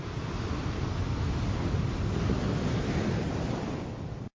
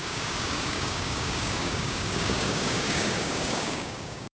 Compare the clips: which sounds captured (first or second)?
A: first